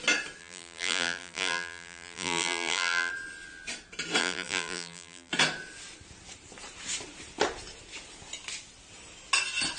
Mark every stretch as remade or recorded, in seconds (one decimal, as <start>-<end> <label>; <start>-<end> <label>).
0.0-0.4 recorded; 0.4-3.1 remade; 3.1-4.2 recorded; 4.2-5.3 remade; 5.3-9.8 recorded